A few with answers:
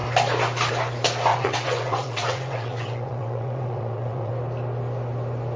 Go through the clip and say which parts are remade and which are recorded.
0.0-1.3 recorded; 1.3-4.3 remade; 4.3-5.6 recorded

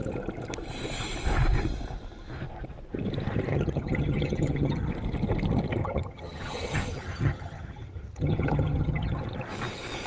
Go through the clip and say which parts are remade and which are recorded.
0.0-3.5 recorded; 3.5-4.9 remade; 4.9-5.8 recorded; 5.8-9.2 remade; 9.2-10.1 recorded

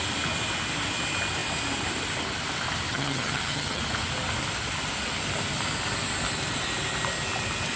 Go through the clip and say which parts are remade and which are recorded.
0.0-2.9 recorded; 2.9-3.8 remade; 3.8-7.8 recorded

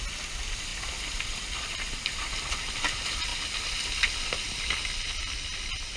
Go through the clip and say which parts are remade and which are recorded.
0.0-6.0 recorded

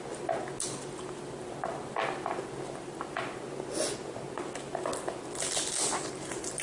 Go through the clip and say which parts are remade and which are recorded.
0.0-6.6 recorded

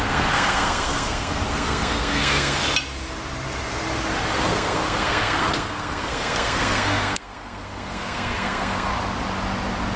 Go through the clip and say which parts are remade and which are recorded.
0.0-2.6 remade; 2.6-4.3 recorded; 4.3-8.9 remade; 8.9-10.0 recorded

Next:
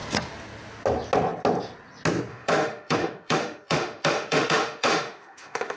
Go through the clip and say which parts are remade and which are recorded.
0.0-2.3 recorded; 2.3-5.8 remade

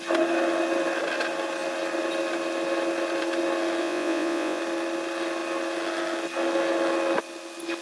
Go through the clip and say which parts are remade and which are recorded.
0.0-3.8 recorded; 3.8-4.6 remade; 4.6-7.8 recorded